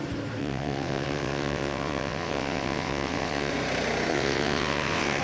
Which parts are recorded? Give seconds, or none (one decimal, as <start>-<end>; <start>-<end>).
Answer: 0.0-0.4; 3.5-4.1